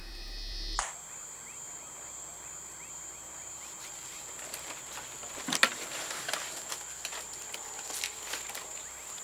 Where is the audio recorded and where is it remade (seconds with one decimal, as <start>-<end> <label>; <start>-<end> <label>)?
0.0-9.2 recorded